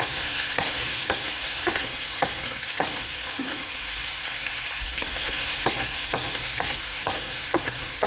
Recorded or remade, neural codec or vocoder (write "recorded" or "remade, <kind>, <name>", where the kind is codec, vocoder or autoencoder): remade, codec, SNAC